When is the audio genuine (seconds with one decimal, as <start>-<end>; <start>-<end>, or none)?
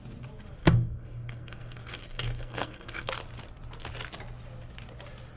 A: 0.0-0.6; 3.1-5.4